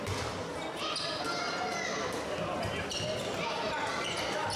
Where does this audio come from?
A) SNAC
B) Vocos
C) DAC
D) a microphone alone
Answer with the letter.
D